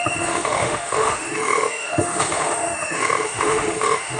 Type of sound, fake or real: fake